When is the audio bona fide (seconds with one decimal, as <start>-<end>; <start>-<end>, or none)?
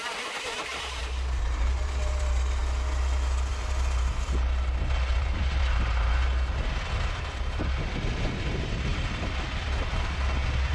0.0-10.7